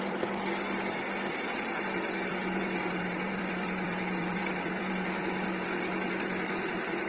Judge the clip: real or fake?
fake